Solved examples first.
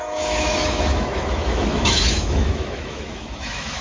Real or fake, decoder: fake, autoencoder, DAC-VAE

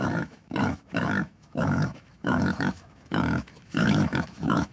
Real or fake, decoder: fake, autoencoder, DAC-VAE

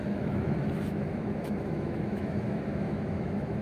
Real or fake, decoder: fake, autoencoder, DAC-VAE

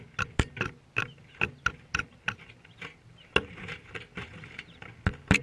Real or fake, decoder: real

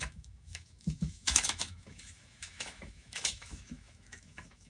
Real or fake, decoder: fake, autoencoder, DAC-VAE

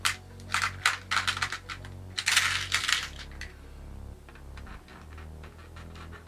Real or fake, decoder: real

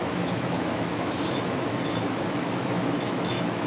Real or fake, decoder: fake, autoencoder, DAC-VAE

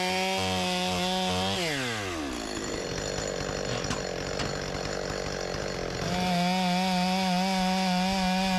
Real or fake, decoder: real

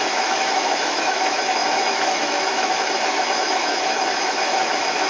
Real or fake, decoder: fake, autoencoder, DAC-VAE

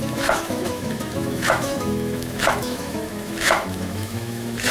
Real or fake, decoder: fake, autoencoder, DAC-VAE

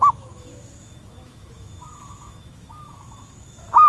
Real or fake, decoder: fake, autoencoder, DAC-VAE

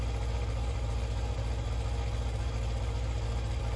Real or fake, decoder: real